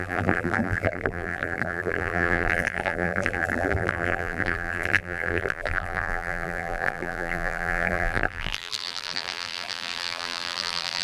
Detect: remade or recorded remade